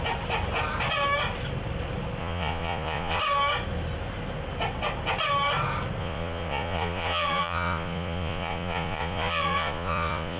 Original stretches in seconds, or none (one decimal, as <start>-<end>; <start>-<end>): 0.0-2.2; 3.2-6.0